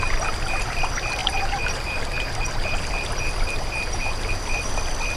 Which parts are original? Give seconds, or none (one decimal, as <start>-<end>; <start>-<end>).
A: 0.0-5.2